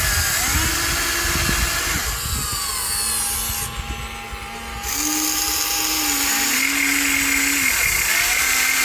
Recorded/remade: recorded